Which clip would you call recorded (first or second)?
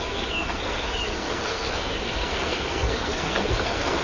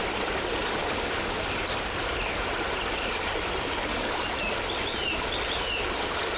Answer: second